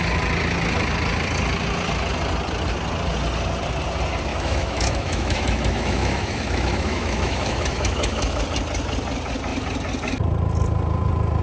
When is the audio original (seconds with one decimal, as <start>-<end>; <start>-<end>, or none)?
0.0-4.3; 8.4-11.4

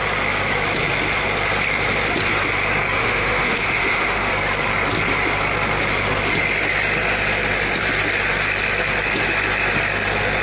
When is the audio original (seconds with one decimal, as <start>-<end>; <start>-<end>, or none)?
0.0-3.0; 4.3-10.4

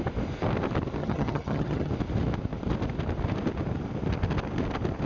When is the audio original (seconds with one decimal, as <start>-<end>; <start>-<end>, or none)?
0.0-1.0; 1.9-5.1

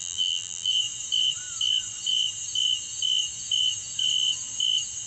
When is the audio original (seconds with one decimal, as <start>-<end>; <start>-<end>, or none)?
0.7-5.1

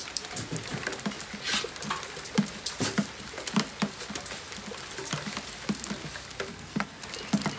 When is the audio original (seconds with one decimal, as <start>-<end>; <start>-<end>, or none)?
0.0-6.5; 7.0-7.6

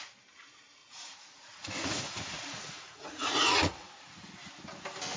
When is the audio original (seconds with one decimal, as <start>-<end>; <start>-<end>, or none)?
0.0-0.8; 3.9-5.2

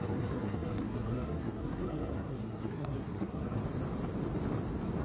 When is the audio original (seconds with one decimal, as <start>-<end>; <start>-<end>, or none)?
3.6-5.0

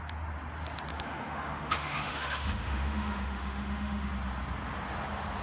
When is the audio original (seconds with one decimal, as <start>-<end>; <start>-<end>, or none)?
0.0-0.9; 4.1-5.4